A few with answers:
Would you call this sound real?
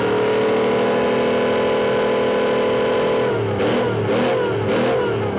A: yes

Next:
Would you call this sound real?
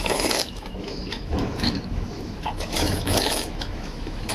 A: no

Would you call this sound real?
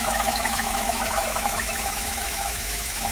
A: no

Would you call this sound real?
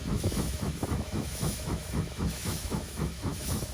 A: no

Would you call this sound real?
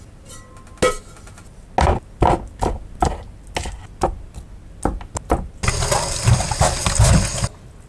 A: yes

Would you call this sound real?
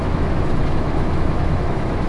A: no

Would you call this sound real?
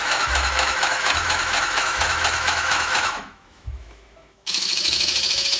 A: no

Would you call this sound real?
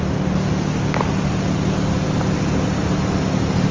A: yes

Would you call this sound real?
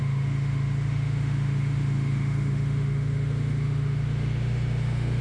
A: no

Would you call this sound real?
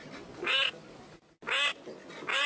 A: yes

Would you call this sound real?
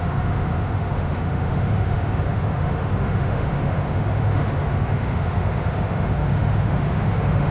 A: no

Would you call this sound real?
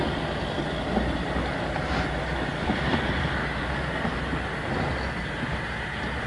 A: yes